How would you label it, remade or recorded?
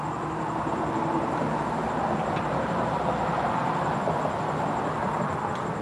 recorded